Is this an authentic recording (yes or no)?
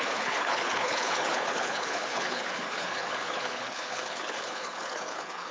no